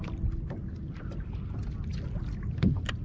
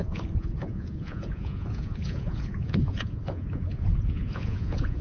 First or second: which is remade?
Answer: second